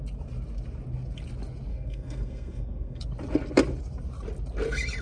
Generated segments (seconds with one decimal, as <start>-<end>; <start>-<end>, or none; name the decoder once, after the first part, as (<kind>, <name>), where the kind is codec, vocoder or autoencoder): 1.7-3.0 (codec, SNAC)